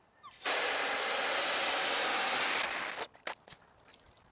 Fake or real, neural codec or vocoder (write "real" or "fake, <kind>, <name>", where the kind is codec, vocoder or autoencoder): real